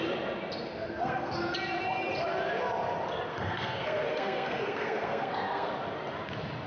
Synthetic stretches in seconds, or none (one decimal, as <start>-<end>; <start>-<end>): 0.7-1.3; 3.3-5.7